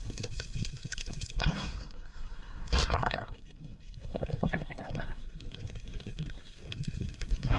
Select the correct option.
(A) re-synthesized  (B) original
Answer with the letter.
A